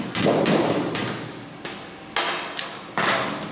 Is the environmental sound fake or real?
real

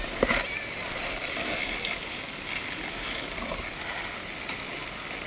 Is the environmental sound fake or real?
real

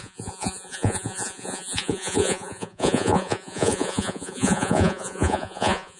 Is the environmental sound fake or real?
fake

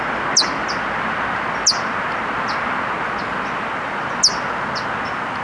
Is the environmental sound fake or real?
real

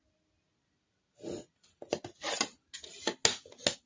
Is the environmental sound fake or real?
real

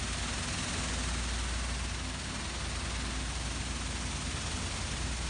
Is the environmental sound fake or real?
real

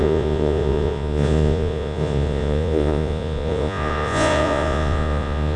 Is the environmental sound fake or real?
fake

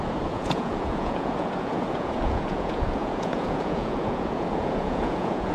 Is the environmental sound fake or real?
fake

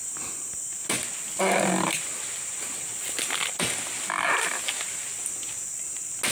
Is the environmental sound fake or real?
real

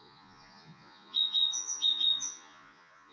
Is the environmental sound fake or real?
fake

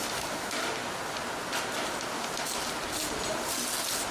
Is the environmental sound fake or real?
real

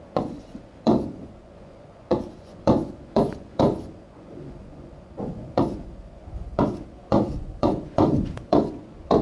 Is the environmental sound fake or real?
fake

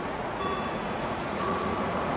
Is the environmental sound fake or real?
fake